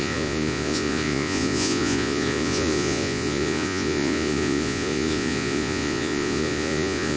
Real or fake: fake